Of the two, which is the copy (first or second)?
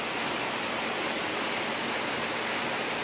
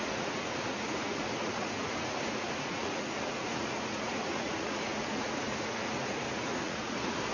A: second